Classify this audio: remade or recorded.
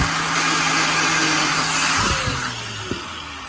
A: recorded